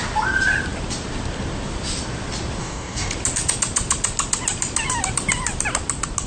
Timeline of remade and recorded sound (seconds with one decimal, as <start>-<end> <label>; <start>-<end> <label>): 0.0-2.6 recorded; 2.6-3.1 remade; 3.1-6.3 recorded